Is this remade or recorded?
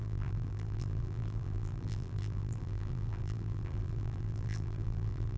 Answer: remade